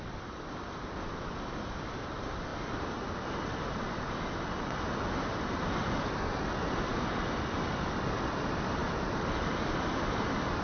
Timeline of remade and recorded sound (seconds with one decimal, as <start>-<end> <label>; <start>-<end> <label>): 0.0-10.6 recorded